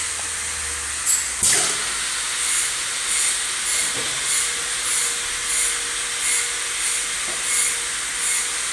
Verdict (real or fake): real